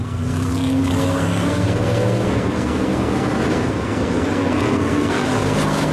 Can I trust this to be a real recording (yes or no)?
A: no